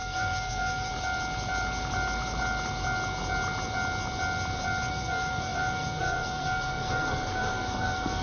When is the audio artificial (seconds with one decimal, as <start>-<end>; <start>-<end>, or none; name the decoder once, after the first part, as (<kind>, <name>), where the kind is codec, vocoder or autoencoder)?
0.0-0.9 (codec, SNAC); 4.9-8.2

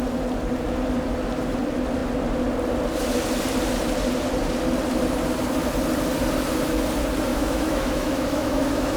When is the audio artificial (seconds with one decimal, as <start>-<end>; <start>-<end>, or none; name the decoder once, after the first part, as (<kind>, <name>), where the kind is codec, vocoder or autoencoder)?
7.3-9.0 (autoencoder, DAC-VAE)